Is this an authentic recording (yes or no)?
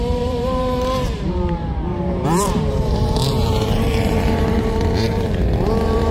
no